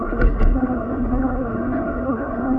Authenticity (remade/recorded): remade